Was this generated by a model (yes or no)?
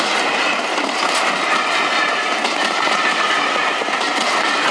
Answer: no